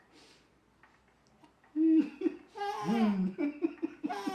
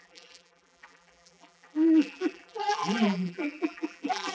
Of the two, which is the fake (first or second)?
second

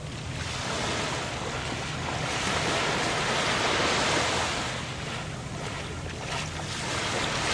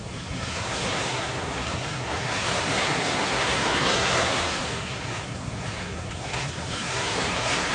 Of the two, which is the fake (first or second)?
second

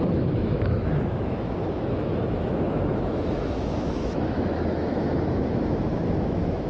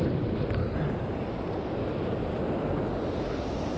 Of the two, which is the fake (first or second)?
first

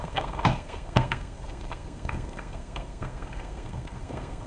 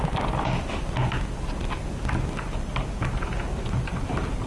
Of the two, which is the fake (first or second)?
first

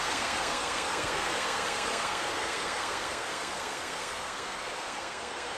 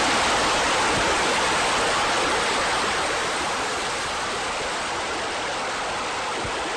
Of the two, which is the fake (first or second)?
first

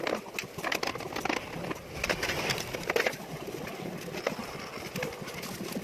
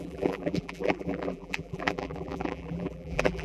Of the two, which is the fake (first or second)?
second